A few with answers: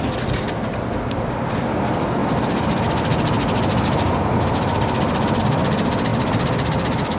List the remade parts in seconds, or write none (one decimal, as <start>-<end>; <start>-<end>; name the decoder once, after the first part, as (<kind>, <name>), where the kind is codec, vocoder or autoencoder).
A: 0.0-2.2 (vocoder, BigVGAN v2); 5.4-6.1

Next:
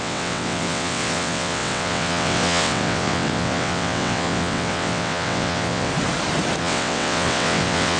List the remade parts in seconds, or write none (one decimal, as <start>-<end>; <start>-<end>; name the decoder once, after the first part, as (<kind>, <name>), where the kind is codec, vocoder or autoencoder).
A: 0.0-5.9 (vocoder, WaveNeXt); 6.6-8.0

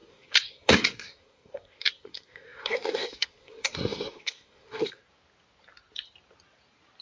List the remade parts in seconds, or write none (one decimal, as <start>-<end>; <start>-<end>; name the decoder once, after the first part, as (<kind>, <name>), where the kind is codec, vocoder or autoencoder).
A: 0.0-5.0 (codec, SNAC)

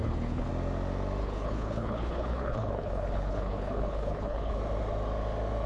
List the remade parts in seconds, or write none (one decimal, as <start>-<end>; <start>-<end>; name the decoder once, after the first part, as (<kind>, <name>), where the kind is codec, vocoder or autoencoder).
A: 0.0-0.5 (codec, HILCodec); 1.2-4.6

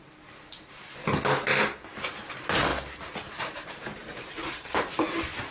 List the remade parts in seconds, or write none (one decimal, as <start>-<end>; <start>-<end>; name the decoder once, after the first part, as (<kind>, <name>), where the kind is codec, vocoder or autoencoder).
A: 0.0-1.5 (vocoder, BigVGAN v2); 2.2-2.7; 3.4-5.5